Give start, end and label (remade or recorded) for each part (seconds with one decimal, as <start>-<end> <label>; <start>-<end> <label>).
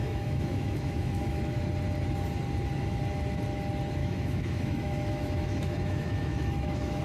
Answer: 0.0-1.6 remade; 1.6-4.0 recorded; 4.0-7.0 remade